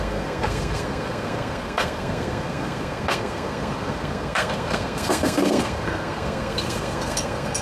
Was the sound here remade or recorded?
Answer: remade